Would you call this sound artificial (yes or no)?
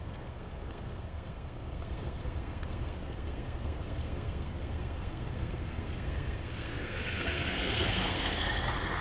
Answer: yes